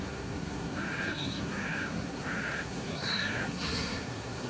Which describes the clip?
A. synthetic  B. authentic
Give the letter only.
A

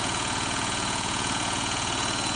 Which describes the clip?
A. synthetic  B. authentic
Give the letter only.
A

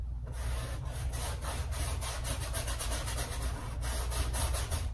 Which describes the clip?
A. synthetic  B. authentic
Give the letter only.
B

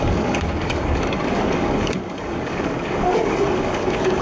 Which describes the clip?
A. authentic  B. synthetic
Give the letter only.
B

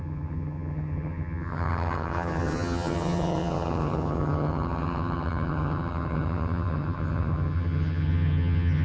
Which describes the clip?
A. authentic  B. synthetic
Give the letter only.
B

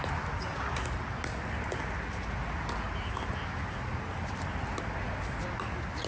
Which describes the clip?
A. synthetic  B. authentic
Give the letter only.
B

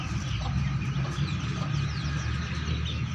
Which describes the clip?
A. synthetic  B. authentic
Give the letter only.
B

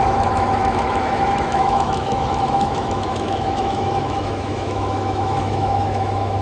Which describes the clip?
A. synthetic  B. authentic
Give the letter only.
A